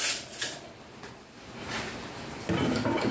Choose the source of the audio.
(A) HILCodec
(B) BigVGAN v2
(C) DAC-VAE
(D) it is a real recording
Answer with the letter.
D